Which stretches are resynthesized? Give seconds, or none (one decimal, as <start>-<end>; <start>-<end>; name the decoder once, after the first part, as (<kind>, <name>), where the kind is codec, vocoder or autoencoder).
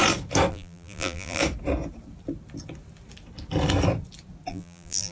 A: 0.5-1.4 (vocoder, BigVGAN v2); 4.5-5.1